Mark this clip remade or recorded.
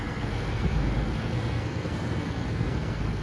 remade